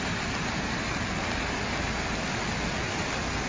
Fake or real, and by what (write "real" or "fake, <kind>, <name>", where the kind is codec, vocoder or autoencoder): real